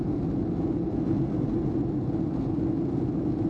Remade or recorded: recorded